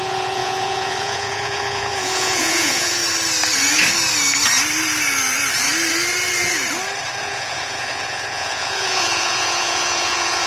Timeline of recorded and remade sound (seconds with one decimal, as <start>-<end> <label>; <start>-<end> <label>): 0.0-3.0 remade; 3.0-7.2 recorded; 7.2-10.5 remade